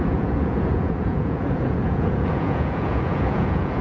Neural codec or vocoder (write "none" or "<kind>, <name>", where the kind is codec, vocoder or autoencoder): vocoder, Vocos